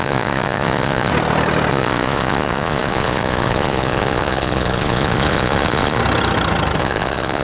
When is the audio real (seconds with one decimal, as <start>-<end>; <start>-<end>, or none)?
1.1-1.7; 6.0-6.8